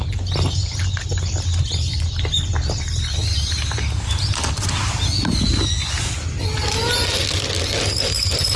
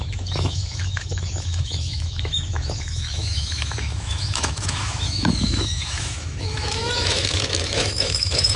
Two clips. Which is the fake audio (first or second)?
second